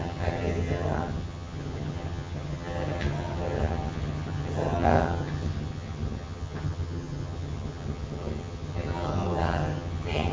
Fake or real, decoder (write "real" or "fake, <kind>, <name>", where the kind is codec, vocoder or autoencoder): fake, vocoder, HiFi-GAN